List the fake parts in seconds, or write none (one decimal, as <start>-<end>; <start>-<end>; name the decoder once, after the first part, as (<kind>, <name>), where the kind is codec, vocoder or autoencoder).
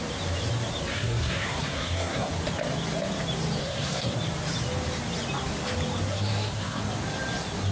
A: 0.9-2.3 (codec, SNAC); 3.6-4.2; 6.1-6.8